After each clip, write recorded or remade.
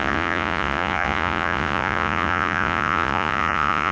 remade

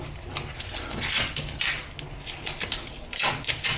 recorded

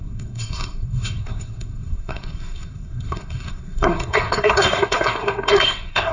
remade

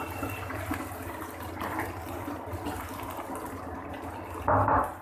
recorded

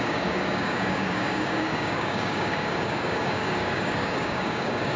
remade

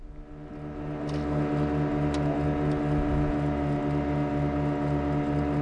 recorded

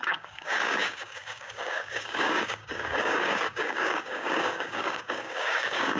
remade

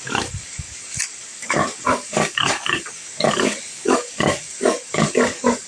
remade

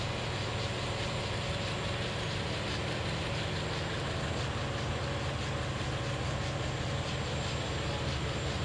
recorded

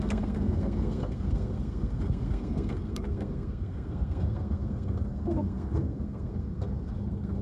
remade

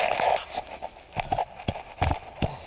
recorded